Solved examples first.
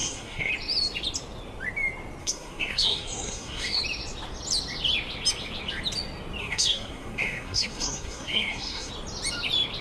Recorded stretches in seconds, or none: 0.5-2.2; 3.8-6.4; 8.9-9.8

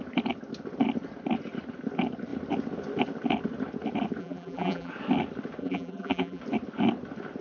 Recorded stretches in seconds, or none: 0.0-4.2; 4.9-5.6; 6.4-7.4

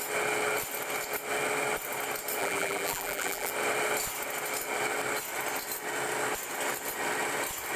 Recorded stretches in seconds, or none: 0.0-2.4; 3.5-7.8

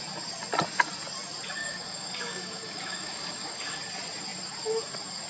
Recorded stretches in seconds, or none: 0.0-1.6; 3.8-5.3

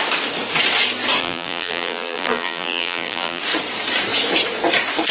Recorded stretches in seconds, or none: 0.0-1.2; 3.4-5.1

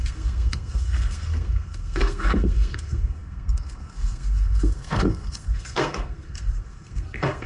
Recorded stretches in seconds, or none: none

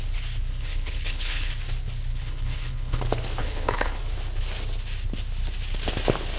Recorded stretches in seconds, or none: 0.0-0.5; 1.5-2.1; 3.0-3.4; 4.0-6.4